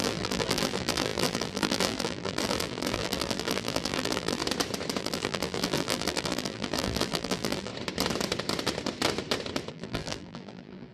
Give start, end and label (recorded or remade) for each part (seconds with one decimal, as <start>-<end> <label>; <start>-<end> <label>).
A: 0.0-4.4 remade; 4.4-5.0 recorded; 5.0-7.7 remade; 7.7-9.7 recorded; 9.7-10.9 remade